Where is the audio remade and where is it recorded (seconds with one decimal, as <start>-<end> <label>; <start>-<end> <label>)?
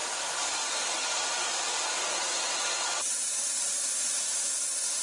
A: 0.0-3.0 remade; 3.0-5.0 recorded